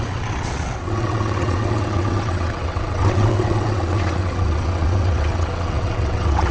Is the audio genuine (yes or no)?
no